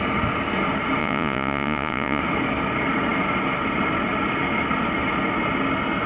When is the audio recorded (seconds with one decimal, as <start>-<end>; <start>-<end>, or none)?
0.0-1.0; 2.2-6.1

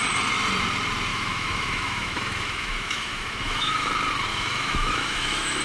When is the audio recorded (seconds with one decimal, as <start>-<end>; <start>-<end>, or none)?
0.0-1.1; 3.9-4.3

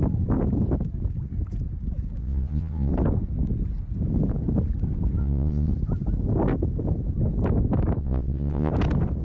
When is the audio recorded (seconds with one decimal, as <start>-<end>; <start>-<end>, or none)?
0.0-2.2; 2.9-5.2; 5.7-8.0; 8.7-9.2

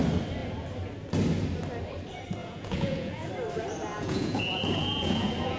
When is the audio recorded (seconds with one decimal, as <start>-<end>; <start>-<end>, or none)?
0.0-2.4; 3.3-3.9

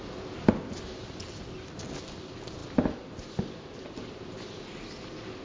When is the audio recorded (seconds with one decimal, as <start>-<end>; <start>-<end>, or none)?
0.0-5.4

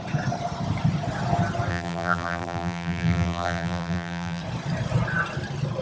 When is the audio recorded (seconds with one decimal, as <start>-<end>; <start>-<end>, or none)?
0.0-1.7; 4.4-5.8

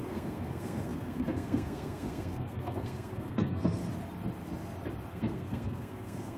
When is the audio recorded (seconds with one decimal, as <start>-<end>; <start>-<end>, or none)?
3.8-5.1